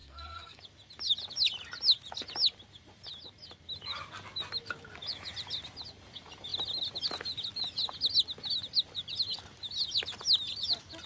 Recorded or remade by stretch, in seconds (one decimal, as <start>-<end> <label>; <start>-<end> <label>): 0.0-0.6 remade; 0.6-11.1 recorded